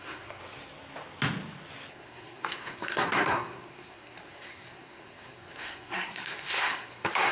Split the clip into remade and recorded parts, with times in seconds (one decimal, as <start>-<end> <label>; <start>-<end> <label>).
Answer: 0.0-0.4 remade; 0.4-1.9 recorded; 1.9-7.3 remade